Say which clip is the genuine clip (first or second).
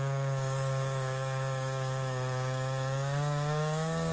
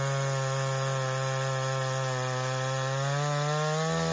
second